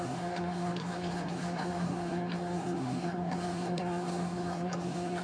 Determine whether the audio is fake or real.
fake